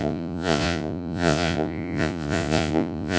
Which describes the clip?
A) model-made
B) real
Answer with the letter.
A